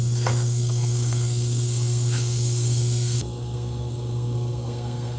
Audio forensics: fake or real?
fake